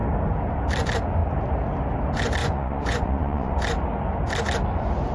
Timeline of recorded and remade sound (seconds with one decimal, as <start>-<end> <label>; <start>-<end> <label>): 0.0-2.4 recorded; 2.4-3.6 remade; 3.6-5.1 recorded